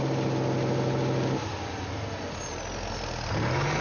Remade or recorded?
recorded